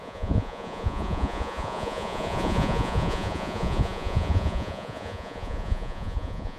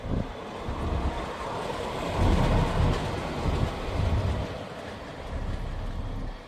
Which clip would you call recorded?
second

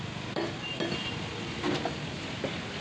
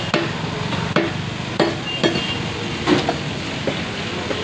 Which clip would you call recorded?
second